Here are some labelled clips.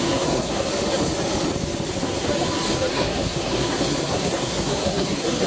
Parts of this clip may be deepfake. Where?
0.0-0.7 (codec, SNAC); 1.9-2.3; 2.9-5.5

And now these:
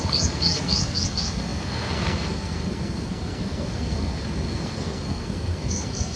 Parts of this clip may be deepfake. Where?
0.0-6.2 (codec, SNAC)

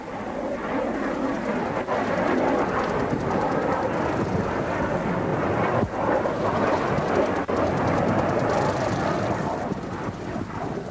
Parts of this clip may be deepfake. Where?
none